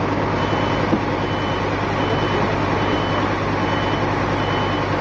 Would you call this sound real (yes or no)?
yes